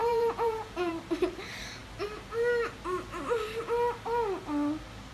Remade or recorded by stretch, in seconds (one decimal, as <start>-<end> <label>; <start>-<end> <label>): 0.0-0.9 remade; 0.9-5.1 recorded